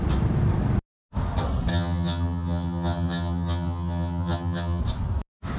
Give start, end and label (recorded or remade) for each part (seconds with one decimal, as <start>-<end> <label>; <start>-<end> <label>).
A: 0.0-1.7 recorded; 1.7-4.8 remade; 4.8-5.6 recorded